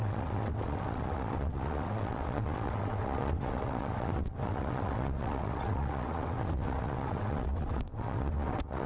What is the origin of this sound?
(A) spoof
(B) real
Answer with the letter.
A